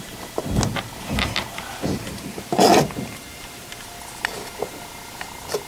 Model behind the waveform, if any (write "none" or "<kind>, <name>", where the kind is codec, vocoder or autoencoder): none